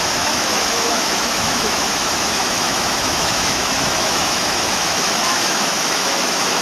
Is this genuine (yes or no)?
no